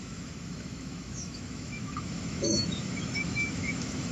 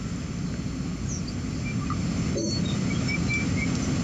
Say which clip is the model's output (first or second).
first